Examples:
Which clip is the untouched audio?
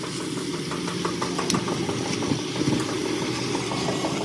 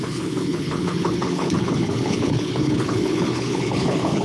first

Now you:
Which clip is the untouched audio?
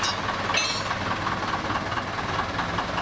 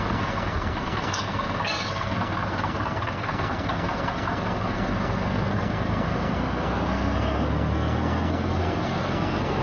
first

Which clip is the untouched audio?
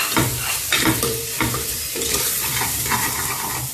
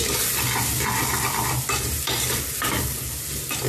second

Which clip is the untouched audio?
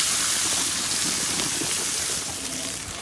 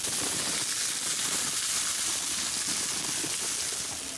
second